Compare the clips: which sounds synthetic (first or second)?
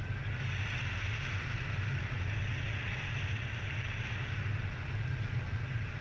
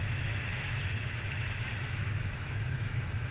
second